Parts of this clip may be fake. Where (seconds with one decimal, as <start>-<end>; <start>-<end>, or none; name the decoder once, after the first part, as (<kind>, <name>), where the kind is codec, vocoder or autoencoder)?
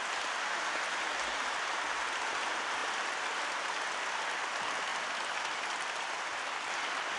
2.8-3.4 (vocoder, BigVGAN v2)